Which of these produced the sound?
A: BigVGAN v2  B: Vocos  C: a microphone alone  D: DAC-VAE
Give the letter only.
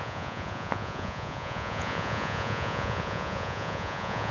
B